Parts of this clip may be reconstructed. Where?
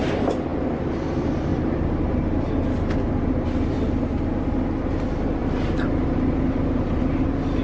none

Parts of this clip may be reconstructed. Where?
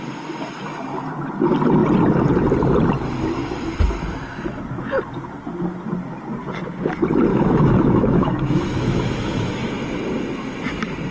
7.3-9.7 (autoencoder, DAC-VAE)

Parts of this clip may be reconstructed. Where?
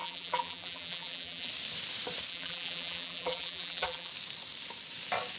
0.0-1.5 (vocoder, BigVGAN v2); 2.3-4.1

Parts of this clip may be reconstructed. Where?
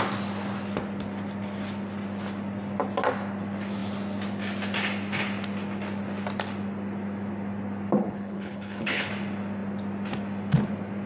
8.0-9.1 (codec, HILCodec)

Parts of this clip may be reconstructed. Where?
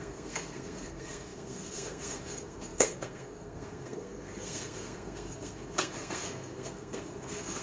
0.0-7.6 (codec, SNAC)